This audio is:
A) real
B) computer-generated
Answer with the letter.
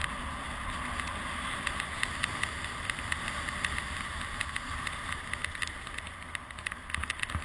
A